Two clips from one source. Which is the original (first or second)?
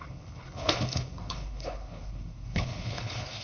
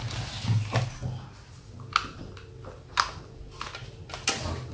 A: second